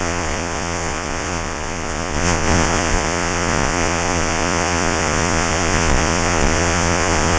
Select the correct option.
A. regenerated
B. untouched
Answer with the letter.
A